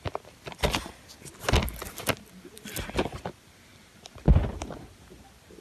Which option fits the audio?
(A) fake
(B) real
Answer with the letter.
B